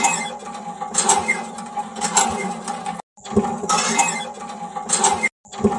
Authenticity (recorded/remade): recorded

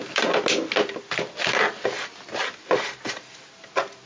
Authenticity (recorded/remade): recorded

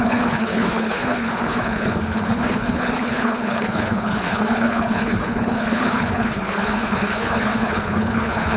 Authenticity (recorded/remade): remade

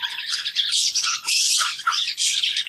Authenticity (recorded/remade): remade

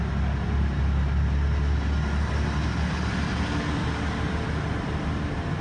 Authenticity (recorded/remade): recorded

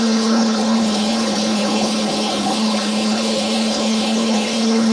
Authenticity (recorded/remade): remade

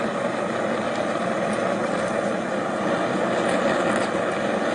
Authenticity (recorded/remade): recorded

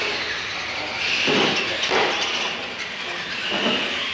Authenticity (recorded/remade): recorded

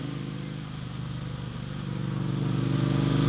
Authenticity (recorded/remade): recorded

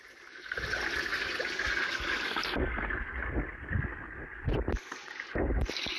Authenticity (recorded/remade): recorded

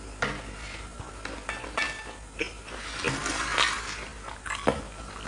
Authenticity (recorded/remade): recorded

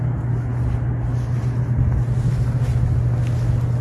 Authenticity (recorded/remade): recorded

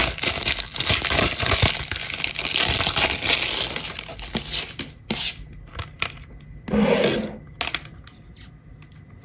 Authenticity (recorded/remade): recorded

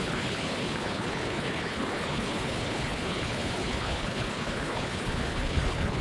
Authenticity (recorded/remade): remade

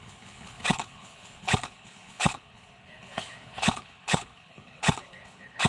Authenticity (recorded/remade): remade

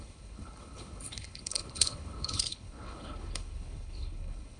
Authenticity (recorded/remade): remade